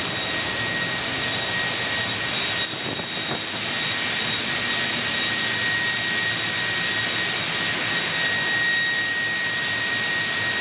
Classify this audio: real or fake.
real